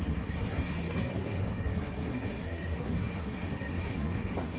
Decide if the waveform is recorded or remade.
remade